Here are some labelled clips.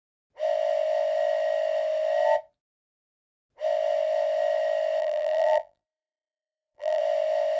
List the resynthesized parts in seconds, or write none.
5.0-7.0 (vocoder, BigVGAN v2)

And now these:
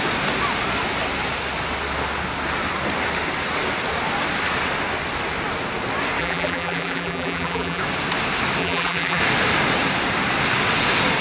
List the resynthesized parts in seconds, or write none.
6.2-7.8 (vocoder, BigVGAN v2); 8.6-9.2

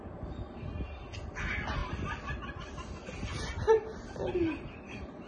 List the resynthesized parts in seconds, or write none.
none

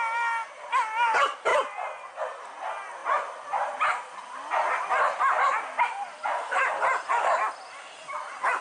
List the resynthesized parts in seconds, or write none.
1.5-2.1 (vocoder, BigVGAN v2)

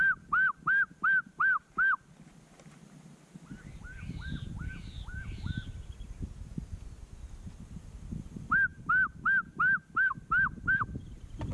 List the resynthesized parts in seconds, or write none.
none

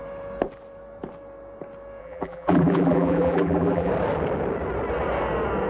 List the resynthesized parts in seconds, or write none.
2.0-3.9 (vocoder, BigVGAN v2)

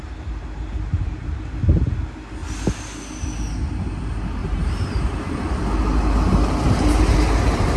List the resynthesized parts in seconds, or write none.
0.9-1.9 (vocoder, BigVGAN v2); 4.4-5.6; 6.3-7.8

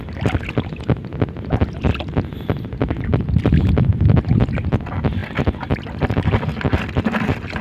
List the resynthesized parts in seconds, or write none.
5.2-6.1 (vocoder, BigVGAN v2)